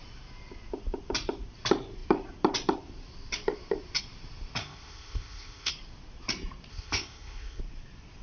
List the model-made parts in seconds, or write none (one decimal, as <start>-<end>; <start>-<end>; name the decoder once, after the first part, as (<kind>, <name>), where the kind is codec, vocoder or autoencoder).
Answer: 4.6-5.7 (codec, ZipCodec); 6.7-7.6